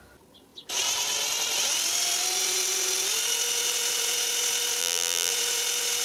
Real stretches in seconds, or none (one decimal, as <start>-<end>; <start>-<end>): 0.0-4.8; 5.3-6.0